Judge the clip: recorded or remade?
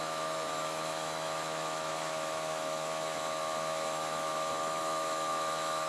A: remade